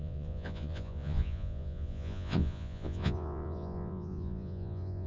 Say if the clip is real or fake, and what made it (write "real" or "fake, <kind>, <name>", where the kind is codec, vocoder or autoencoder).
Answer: fake, vocoder, Vocos